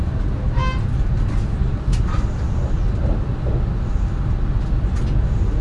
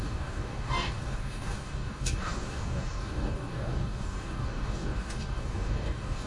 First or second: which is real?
first